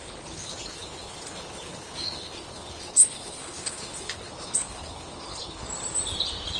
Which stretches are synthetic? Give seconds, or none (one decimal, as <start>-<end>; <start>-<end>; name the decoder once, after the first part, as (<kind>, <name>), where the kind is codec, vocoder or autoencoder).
0.0-5.6 (codec, HILCodec)